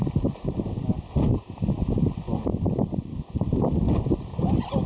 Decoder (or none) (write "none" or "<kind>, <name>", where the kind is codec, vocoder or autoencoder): none